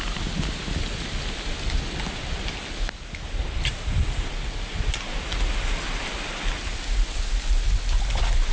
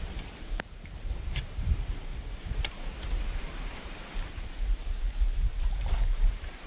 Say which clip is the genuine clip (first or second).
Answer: first